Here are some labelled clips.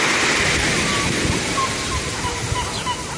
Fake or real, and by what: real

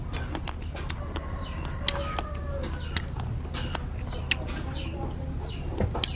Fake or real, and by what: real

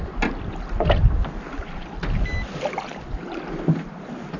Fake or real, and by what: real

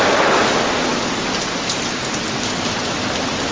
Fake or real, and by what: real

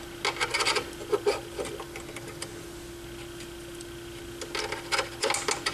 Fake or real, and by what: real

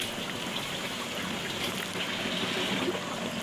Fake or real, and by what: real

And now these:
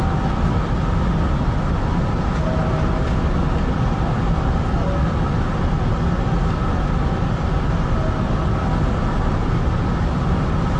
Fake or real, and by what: real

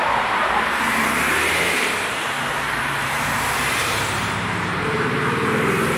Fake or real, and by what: fake, vocoder, BigVGAN v2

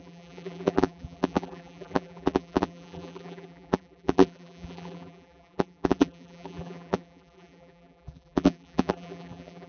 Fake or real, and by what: fake, vocoder, BigVGAN v2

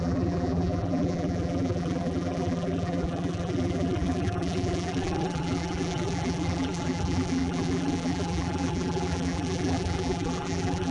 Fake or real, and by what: fake, vocoder, BigVGAN v2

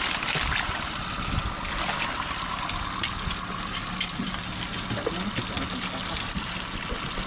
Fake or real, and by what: real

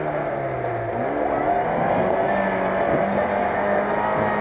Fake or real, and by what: real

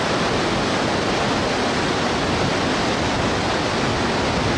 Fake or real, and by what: real